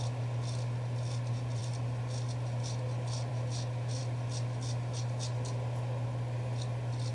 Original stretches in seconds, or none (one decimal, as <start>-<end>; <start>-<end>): 0.0-7.1